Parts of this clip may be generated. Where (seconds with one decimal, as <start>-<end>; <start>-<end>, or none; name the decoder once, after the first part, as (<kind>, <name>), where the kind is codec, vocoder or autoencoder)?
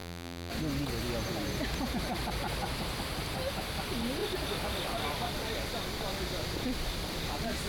0.0-0.5 (vocoder, BigVGAN v2)